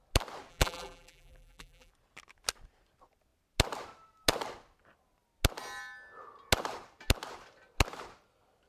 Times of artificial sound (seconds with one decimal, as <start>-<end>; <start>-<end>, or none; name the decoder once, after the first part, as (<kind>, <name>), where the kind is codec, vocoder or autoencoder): 0.5-1.9 (vocoder, BigVGAN v2)